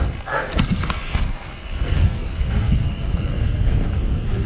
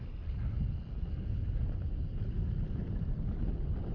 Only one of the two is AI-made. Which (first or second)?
first